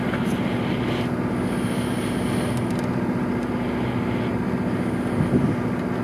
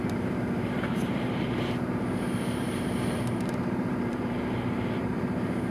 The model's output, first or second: second